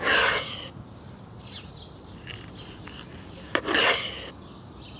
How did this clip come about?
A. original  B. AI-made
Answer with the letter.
A